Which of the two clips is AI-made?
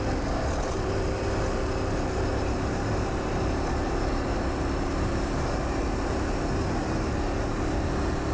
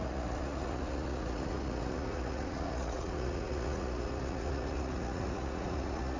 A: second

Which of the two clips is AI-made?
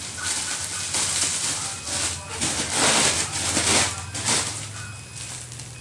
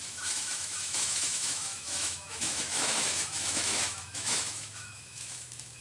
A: second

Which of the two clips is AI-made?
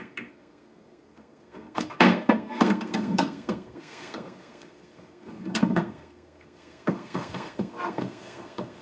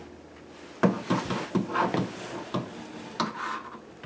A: first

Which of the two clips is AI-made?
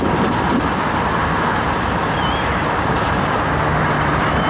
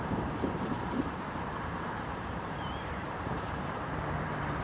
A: second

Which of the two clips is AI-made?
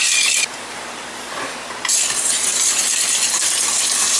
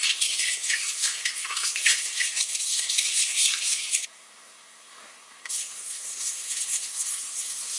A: second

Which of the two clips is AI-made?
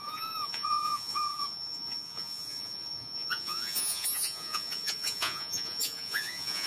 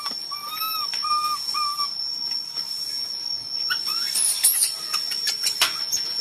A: first